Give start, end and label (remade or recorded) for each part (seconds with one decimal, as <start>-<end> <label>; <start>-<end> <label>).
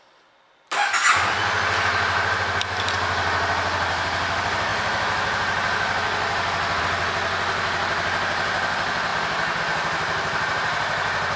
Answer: 0.0-11.4 recorded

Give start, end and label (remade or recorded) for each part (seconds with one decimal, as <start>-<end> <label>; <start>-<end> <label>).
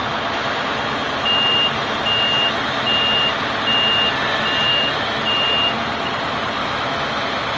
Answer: 0.0-4.7 recorded; 4.7-5.2 remade; 5.2-6.6 recorded; 6.6-7.6 remade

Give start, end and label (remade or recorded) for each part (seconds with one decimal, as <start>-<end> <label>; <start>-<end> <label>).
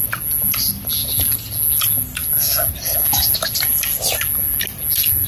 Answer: 0.0-5.3 recorded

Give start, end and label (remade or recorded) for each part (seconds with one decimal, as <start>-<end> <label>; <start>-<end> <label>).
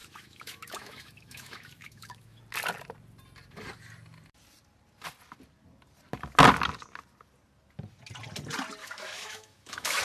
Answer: 0.0-2.4 remade; 2.4-8.8 recorded; 8.8-10.0 remade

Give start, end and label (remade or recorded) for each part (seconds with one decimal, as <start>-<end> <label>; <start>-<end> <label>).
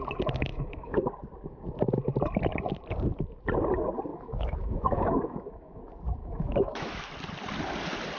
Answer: 0.0-0.5 recorded; 0.5-1.1 remade; 1.1-4.1 recorded; 4.1-5.8 remade; 5.8-6.2 recorded; 6.2-7.1 remade; 7.1-8.2 recorded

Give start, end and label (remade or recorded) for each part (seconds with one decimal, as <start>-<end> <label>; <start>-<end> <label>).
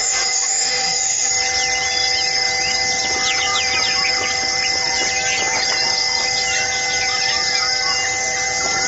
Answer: 0.0-1.3 remade; 1.3-8.9 recorded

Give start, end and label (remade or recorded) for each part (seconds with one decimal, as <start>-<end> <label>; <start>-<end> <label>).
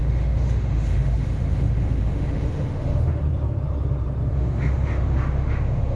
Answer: 0.0-3.2 remade; 3.2-4.3 recorded; 4.3-6.0 remade